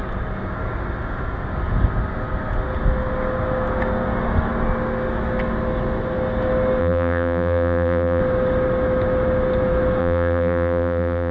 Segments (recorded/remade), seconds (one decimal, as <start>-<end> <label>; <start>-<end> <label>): 0.0-6.8 recorded; 6.8-8.2 remade; 8.2-10.0 recorded; 10.0-11.3 remade